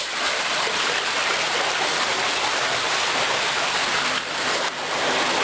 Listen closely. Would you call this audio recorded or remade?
recorded